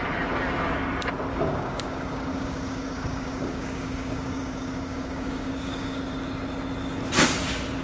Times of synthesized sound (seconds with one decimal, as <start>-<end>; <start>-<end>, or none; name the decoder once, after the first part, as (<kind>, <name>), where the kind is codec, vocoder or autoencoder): 1.3-6.0 (codec, DAC)